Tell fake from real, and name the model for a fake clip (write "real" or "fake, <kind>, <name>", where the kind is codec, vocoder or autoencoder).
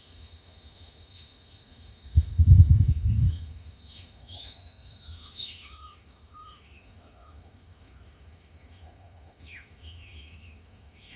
fake, autoencoder, DAC-VAE